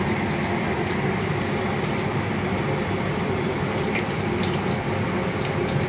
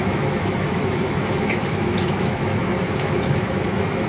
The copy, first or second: second